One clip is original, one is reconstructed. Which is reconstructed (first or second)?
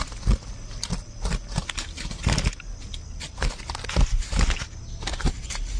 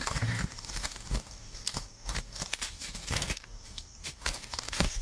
second